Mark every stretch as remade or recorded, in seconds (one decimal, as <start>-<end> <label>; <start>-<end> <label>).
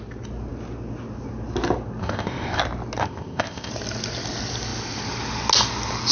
0.0-2.0 recorded; 2.0-2.6 remade; 2.6-3.0 recorded; 3.0-3.7 remade; 3.7-6.1 recorded